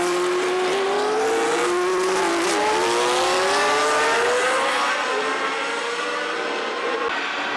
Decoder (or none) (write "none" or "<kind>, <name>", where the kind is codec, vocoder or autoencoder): none